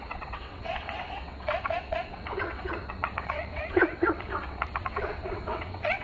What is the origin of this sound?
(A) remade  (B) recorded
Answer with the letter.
A